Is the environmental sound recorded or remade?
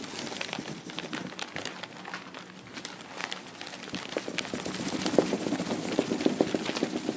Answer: recorded